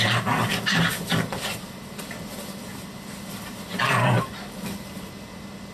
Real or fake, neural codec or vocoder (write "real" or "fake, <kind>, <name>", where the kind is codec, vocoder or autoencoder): real